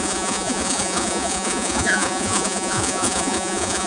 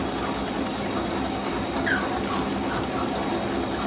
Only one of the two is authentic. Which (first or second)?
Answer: second